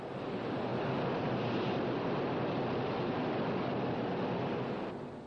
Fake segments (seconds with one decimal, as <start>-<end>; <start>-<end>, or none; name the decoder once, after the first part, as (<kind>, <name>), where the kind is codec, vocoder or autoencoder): none